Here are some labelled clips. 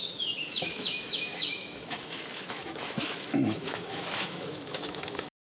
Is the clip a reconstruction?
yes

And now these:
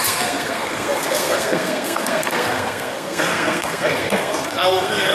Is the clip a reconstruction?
yes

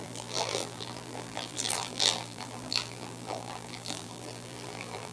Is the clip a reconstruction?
yes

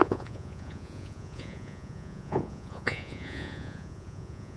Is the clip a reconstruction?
yes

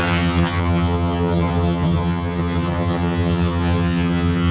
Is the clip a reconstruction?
yes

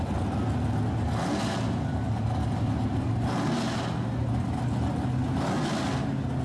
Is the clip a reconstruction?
no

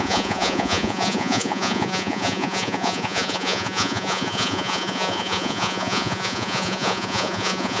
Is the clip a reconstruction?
yes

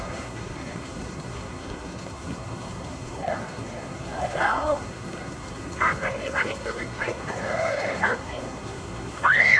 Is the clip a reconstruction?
yes